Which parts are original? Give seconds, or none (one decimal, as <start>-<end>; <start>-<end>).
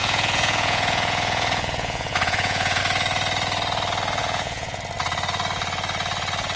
2.8-4.2; 4.8-6.6